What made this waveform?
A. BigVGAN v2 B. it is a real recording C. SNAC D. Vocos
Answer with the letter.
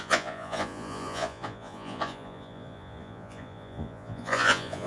D